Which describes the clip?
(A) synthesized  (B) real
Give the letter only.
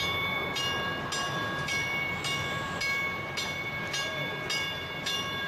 B